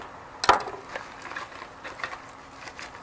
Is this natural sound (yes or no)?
yes